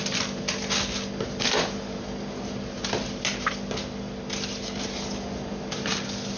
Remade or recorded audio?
recorded